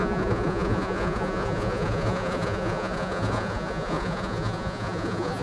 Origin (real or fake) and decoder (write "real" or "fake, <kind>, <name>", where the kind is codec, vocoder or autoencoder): fake, vocoder, Vocos